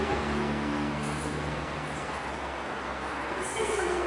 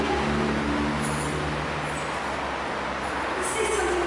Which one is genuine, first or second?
second